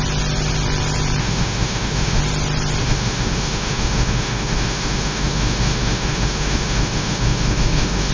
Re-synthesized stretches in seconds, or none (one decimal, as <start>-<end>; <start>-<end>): 1.2-2.2; 2.8-8.1

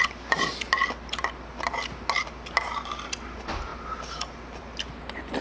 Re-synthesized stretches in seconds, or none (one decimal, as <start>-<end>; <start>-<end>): none

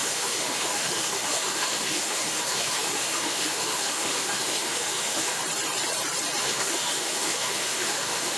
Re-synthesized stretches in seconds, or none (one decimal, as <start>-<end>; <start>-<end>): 0.0-5.4; 6.4-8.4